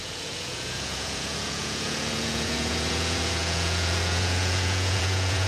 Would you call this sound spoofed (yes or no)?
yes